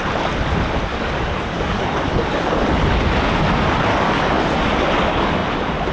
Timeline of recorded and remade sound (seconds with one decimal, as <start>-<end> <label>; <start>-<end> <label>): 0.0-0.9 recorded; 0.9-2.7 remade; 2.7-3.9 recorded; 3.9-4.4 remade; 4.4-5.9 recorded